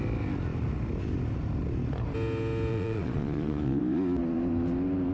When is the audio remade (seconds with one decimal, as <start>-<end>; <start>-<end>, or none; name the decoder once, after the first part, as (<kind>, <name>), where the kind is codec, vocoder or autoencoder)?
2.7-3.8 (vocoder, Vocos)